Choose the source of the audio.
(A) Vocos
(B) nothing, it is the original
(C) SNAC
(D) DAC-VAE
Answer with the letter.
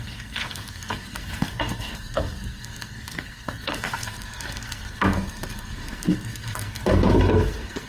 C